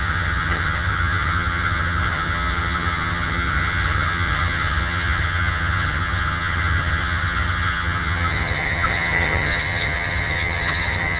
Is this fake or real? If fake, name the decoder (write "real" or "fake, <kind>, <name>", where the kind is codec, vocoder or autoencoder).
fake, vocoder, HiFi-GAN